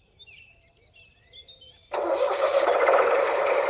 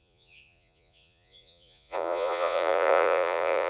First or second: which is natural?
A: first